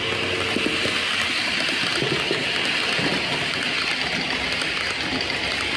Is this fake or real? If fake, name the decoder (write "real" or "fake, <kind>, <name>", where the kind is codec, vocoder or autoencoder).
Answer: real